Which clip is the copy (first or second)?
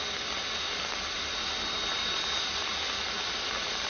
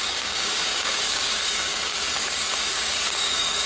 second